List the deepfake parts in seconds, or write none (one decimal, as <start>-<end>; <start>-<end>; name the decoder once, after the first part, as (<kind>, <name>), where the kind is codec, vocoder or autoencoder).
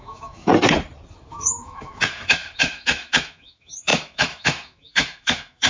0.0-0.5 (autoencoder, DAC-VAE); 1.3-5.7